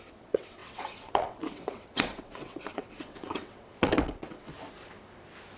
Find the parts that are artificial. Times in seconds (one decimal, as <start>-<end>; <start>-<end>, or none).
0.0-4.5